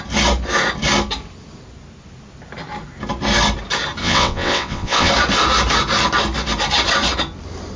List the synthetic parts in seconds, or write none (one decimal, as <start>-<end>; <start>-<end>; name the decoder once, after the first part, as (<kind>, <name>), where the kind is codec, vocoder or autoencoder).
4.0-5.1 (vocoder, WaveNeXt)